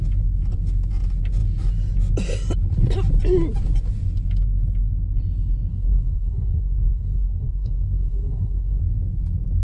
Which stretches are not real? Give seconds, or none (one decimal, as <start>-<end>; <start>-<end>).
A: 5.7-8.8